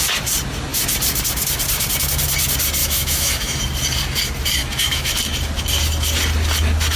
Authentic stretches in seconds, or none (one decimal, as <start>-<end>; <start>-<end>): 0.0-2.8; 3.6-4.6; 5.1-7.0